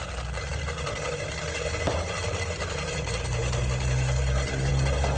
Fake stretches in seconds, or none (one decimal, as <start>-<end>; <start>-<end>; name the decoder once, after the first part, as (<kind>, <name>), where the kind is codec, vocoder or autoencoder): none